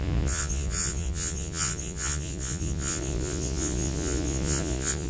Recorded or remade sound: remade